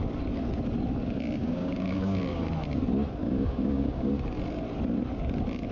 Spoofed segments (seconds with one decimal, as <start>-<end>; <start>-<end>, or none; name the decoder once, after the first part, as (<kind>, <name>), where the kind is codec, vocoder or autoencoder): 1.4-2.4 (codec, DAC); 3.2-4.1